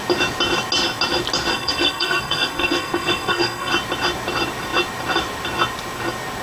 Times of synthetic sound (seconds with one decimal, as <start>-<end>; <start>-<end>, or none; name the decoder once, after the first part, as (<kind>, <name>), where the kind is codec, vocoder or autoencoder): 1.5-3.7 (codec, SNAC)

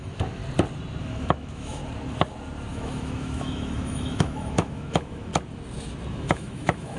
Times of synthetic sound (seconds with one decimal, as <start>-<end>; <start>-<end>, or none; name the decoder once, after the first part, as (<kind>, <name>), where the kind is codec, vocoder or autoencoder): 0.0-0.4 (autoencoder, DAC-VAE); 1.0-1.8; 2.7-5.3; 6.1-7.0

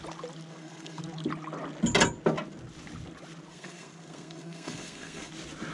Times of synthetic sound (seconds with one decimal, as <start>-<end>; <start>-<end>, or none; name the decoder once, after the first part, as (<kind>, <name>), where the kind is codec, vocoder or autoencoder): 0.5-1.0 (codec, SNAC); 3.5-5.3

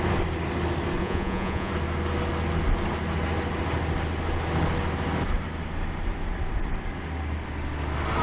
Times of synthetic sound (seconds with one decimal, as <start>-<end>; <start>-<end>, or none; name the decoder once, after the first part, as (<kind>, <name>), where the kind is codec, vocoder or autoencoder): 1.0-1.7 (vocoder, Vocos)

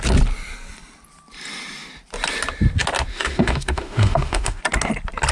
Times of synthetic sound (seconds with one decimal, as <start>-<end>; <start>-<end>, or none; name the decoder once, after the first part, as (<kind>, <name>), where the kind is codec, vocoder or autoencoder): 3.1-4.6 (autoencoder, DAC-VAE)

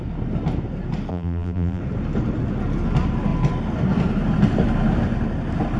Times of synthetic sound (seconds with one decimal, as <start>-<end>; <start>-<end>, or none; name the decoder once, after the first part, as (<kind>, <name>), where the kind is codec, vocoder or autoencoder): 1.1-1.8 (vocoder, BigVGAN v2)

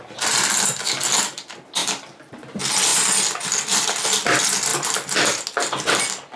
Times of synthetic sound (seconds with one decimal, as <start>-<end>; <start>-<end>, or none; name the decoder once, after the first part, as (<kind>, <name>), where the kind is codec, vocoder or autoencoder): 1.8-2.3 (vocoder, BigVGAN v2); 2.9-4.0; 4.7-5.4